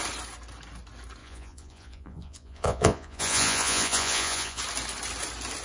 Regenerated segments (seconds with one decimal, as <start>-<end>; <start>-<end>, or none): 1.2-4.6